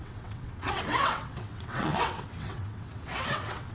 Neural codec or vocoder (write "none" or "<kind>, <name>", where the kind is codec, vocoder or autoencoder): vocoder, WaveNeXt